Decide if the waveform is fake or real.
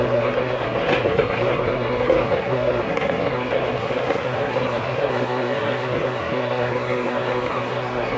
fake